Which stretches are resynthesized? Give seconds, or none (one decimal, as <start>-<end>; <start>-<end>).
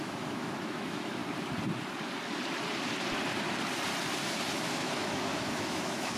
0.0-1.2; 4.7-6.2